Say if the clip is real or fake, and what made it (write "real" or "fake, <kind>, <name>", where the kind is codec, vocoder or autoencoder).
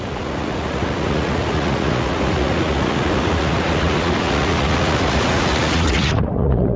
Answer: fake, vocoder, Vocos